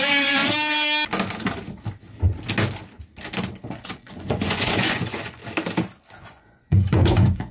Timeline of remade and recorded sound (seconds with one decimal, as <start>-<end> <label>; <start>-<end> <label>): 0.0-0.4 remade; 0.4-3.7 recorded; 3.7-5.4 remade; 5.4-6.2 recorded; 6.2-7.5 remade